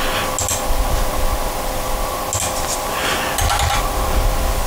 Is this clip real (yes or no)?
yes